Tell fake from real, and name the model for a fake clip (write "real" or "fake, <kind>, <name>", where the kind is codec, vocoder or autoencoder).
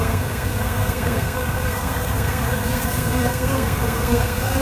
fake, codec, SNAC